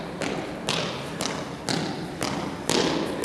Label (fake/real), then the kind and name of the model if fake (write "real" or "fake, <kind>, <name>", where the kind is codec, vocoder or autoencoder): real